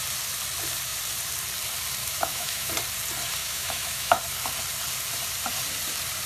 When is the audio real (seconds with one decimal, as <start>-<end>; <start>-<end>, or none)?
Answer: 0.0-2.0; 2.7-3.4; 4.2-6.3